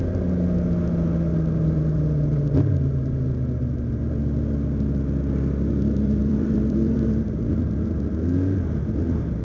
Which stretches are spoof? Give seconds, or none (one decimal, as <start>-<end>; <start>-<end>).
6.2-7.5